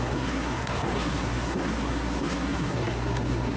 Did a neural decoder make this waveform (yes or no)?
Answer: yes